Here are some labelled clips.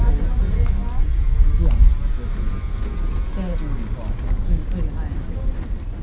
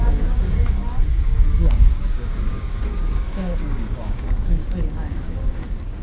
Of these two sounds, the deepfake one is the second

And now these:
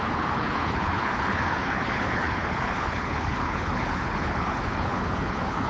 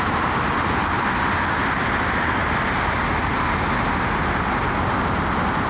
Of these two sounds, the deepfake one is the first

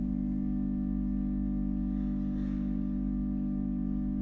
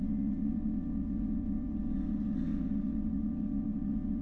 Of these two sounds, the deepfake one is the second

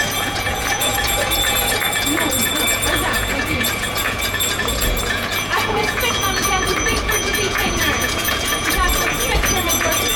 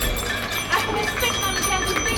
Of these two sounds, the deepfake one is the first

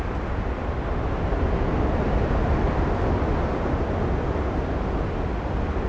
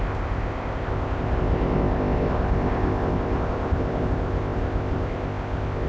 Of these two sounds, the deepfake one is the second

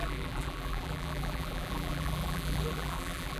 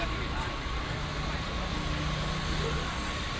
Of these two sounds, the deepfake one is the first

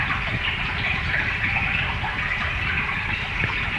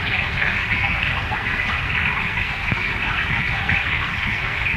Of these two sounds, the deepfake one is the second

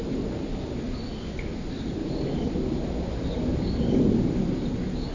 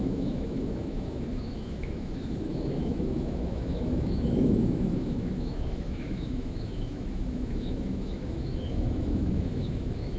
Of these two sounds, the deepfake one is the second